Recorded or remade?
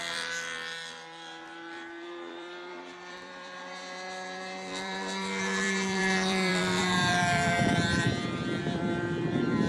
remade